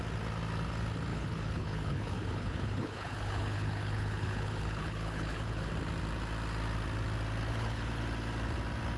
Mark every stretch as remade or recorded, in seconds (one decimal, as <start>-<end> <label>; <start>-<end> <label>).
0.0-1.1 recorded; 1.1-5.7 remade; 5.7-7.5 recorded; 7.5-8.0 remade; 8.0-9.0 recorded